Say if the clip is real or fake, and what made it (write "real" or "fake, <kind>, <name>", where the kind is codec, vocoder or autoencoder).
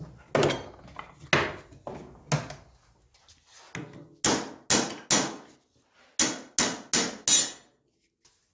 real